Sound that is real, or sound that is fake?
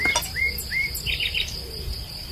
real